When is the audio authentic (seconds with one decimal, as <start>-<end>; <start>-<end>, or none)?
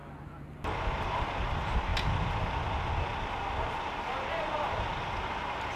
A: 0.0-1.2; 1.9-5.3